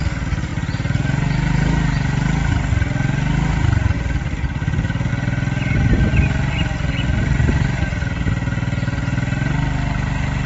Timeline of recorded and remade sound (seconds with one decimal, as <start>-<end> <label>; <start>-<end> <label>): 0.0-10.5 recorded